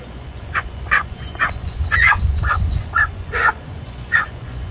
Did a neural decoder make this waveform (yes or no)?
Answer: yes